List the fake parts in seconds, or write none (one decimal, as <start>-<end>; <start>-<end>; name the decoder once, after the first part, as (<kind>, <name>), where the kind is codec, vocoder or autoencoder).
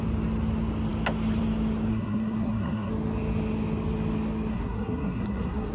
1.9-2.9 (codec, SNAC); 4.5-5.7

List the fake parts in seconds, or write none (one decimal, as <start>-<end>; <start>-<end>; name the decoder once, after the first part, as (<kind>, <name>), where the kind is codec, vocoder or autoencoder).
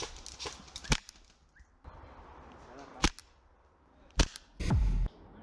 none